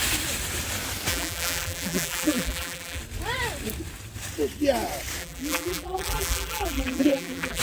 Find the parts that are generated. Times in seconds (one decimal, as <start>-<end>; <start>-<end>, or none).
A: 1.1-3.0; 5.2-7.6

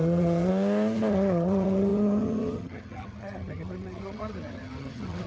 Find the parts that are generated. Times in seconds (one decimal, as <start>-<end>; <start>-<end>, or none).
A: 0.0-0.5; 1.1-5.3

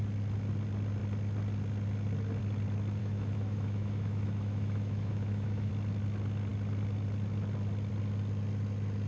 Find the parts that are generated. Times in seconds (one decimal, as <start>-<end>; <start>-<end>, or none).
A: 3.0-5.7

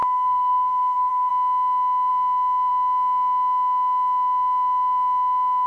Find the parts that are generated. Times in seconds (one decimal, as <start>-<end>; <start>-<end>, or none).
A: 0.0-1.3